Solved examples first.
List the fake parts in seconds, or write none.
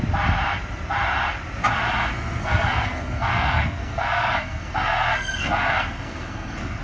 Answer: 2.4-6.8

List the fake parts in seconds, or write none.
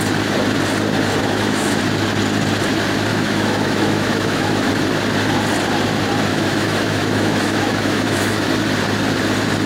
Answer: 1.2-1.8; 3.1-4.7; 6.3-8.5